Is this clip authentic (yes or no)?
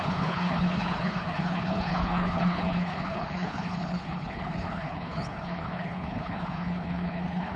no